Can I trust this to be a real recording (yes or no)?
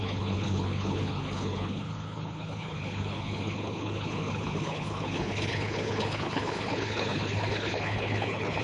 no